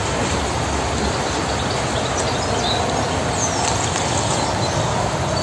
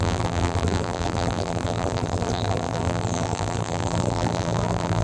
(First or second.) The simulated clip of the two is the second